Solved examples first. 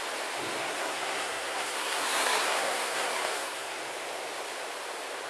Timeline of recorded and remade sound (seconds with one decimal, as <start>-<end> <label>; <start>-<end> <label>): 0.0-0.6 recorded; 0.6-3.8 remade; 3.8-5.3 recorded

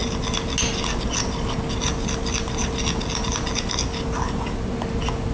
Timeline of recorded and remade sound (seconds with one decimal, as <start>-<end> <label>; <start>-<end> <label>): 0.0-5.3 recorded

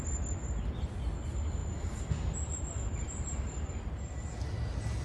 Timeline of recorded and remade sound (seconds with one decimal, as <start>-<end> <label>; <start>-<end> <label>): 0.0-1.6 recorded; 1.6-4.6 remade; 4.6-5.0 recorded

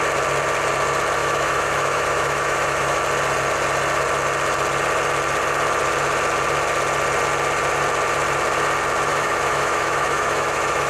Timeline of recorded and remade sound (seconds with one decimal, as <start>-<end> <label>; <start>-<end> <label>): 0.0-1.2 recorded; 1.2-3.0 remade; 3.0-9.1 recorded; 9.1-10.9 remade

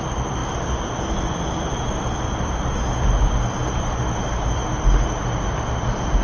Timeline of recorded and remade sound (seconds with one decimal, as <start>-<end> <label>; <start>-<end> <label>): 0.0-6.2 recorded

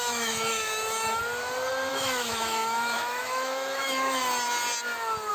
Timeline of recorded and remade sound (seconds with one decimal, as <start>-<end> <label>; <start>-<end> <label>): 0.0-1.2 remade; 1.2-1.9 recorded; 1.9-4.2 remade; 4.2-5.3 recorded

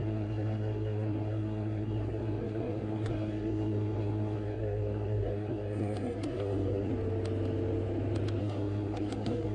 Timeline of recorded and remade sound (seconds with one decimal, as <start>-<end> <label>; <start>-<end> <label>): 0.0-6.9 remade; 6.9-8.4 recorded; 8.4-9.5 remade